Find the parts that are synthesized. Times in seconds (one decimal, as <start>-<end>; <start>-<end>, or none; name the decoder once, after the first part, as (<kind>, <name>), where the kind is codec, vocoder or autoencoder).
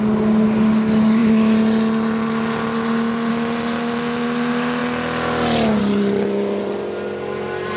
none